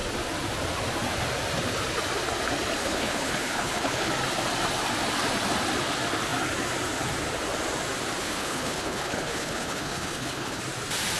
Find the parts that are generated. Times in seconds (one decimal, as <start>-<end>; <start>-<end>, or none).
2.8-4.1; 8.2-10.6